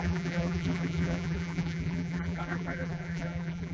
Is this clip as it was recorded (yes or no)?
no